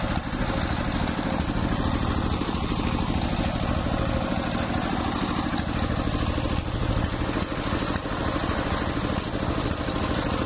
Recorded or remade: recorded